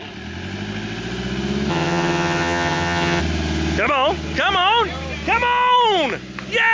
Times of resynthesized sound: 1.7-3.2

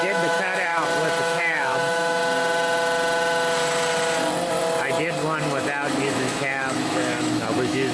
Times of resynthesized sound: 0.0-0.7; 1.2-2.2; 6.1-7.9

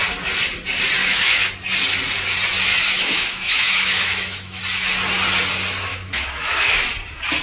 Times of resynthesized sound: 1.0-1.5; 2.7-4.6; 5.9-6.8

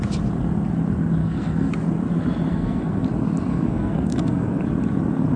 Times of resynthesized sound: 1.2-1.7; 2.5-3.0; 3.5-4.6

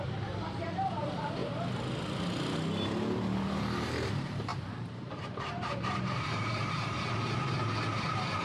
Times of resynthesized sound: 0.0-1.4; 3.6-7.4

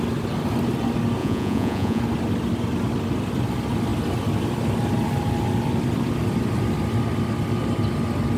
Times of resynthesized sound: 1.2-2.0

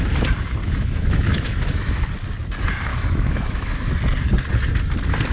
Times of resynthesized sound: 0.6-2.0; 2.9-3.9

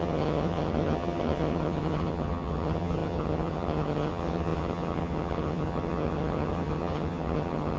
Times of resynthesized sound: 0.0-7.8